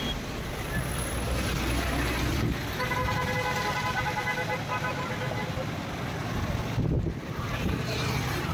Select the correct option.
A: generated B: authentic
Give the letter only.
B